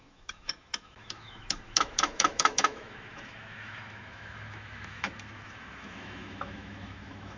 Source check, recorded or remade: remade